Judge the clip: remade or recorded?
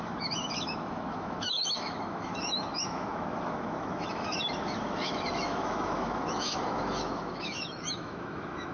remade